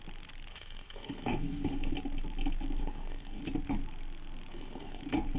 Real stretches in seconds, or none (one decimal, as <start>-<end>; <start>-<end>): 0.0-0.5; 1.9-2.8; 3.4-4.5; 5.0-5.4